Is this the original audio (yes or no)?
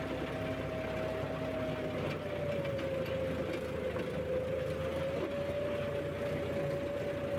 yes